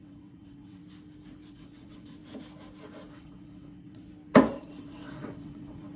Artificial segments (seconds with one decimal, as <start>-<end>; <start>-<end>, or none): 0.0-0.8; 1.5-2.2; 3.1-4.1; 4.6-6.0